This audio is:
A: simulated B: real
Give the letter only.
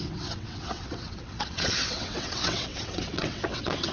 A